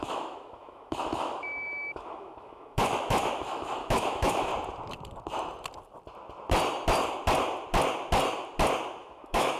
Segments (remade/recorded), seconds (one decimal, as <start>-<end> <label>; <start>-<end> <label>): 0.0-4.5 remade; 4.5-9.0 recorded; 9.0-9.6 remade